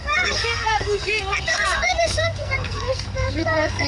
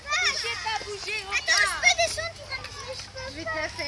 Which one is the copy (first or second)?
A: first